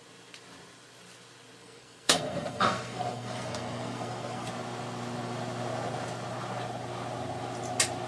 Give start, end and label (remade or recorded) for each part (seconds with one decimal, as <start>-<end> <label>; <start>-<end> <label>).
0.0-1.6 recorded; 1.6-4.5 remade; 4.5-8.1 recorded